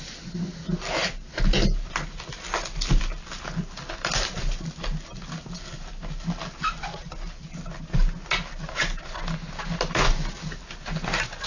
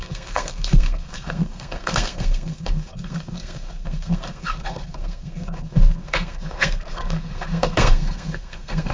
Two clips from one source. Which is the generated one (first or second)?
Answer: second